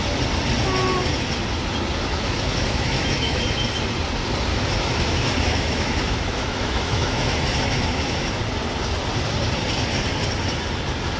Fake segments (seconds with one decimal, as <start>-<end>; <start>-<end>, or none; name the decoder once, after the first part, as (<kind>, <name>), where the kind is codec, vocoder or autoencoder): 2.1-3.4 (autoencoder, DAC-VAE); 4.5-8.3